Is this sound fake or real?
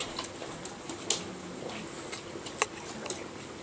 real